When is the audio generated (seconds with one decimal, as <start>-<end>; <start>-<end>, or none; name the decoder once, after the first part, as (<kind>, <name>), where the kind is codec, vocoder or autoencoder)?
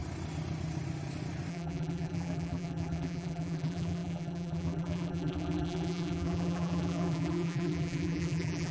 1.5-8.7 (vocoder, BigVGAN v2)